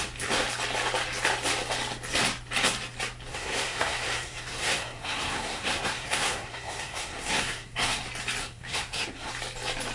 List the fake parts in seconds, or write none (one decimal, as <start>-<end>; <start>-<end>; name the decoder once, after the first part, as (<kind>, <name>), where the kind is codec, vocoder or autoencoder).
3.3-8.0 (codec, SNAC); 8.4-9.3